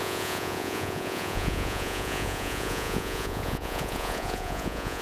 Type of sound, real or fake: fake